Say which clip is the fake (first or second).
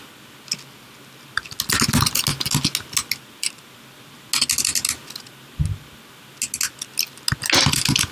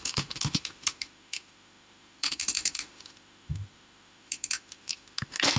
second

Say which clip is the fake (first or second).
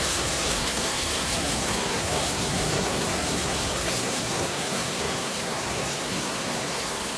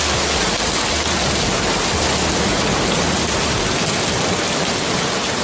first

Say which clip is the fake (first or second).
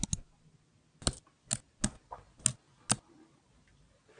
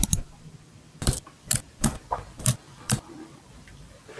second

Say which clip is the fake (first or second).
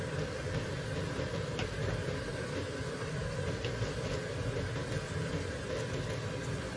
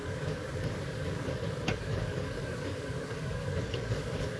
second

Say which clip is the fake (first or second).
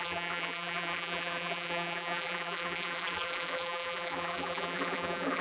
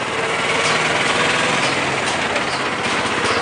first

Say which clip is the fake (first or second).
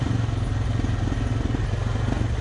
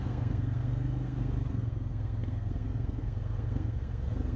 second